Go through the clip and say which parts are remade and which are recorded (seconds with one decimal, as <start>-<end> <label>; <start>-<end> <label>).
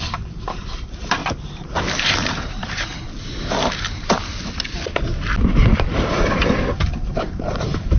0.0-1.2 remade; 1.2-2.0 recorded; 2.0-2.9 remade; 2.9-5.9 recorded; 5.9-8.0 remade